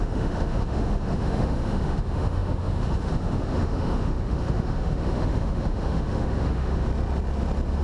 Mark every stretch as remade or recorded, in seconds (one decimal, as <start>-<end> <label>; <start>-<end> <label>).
0.0-6.9 remade; 6.9-7.8 recorded